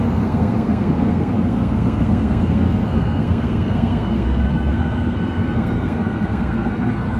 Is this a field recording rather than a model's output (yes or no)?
no